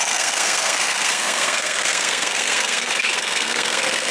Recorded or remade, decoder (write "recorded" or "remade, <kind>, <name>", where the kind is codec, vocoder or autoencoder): remade, codec, SNAC